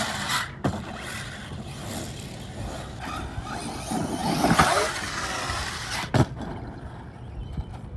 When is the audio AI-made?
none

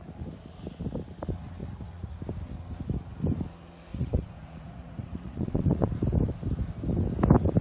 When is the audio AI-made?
1.6-2.2 (vocoder, Vocos); 3.9-5.9

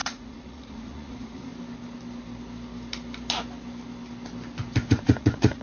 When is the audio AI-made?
0.0-1.5 (vocoder, Vocos); 4.9-5.6

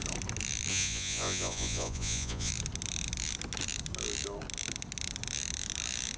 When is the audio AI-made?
0.7-2.5 (vocoder, Vocos)

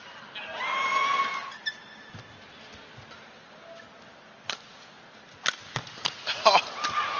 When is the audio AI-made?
none

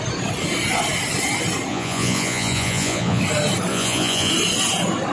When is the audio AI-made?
1.7-3.2 (vocoder, Vocos); 3.7-4.3